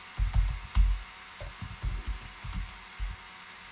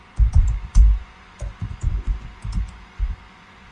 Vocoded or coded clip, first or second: second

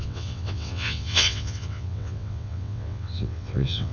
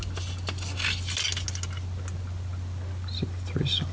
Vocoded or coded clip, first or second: first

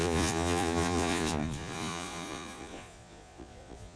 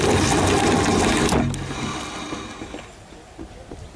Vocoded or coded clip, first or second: first